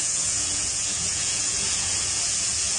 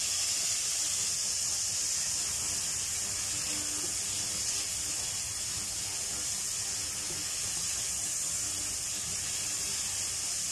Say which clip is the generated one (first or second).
first